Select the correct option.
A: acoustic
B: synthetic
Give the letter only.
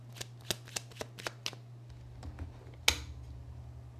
A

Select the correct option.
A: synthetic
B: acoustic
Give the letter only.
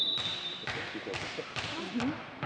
A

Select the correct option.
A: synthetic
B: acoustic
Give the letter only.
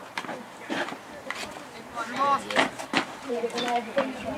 A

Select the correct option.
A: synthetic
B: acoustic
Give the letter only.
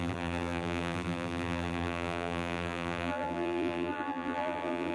A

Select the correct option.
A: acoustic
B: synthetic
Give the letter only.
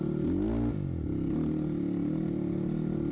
A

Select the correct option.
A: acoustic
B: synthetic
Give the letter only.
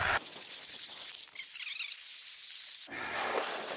A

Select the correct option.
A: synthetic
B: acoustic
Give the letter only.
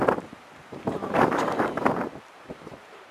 A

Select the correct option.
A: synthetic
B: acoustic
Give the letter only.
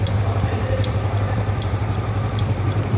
A